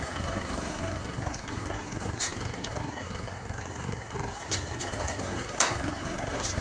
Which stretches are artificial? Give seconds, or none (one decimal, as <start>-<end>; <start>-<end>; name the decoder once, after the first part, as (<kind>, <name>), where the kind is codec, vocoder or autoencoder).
0.0-6.6 (codec, SNAC)